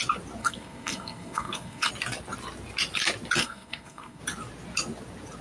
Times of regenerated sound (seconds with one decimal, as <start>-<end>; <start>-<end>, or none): 0.4-1.9; 3.4-4.2